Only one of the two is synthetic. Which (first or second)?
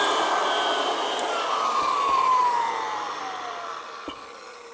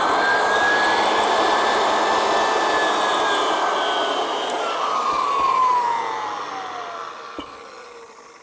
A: first